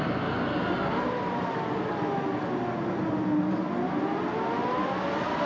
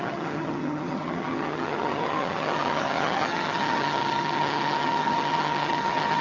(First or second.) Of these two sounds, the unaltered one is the first